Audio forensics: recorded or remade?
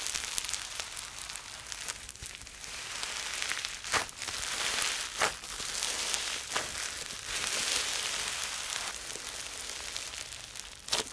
recorded